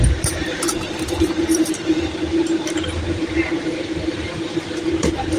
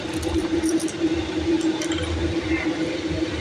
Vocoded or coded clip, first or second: first